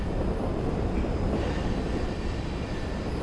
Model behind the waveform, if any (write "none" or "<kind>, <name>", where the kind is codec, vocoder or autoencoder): none